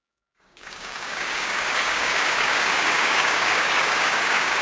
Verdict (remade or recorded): remade